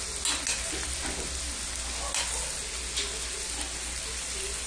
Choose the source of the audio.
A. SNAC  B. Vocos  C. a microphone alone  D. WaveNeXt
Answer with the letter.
C